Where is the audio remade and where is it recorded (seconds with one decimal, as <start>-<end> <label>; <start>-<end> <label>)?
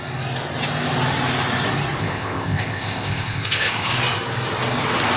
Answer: 0.0-2.0 recorded; 2.0-3.9 remade; 3.9-5.2 recorded